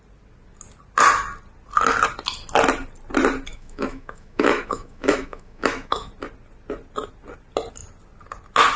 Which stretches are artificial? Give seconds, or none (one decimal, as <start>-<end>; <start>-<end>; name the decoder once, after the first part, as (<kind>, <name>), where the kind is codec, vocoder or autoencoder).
3.5-6.1 (autoencoder, DAC-VAE)